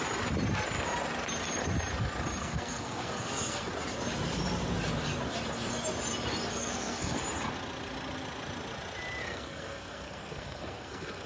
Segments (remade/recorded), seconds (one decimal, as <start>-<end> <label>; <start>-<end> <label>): 0.0-2.4 recorded; 2.4-3.7 remade; 3.7-6.5 recorded; 6.5-7.2 remade; 7.2-9.2 recorded; 9.2-11.3 remade